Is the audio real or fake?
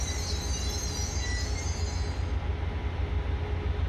real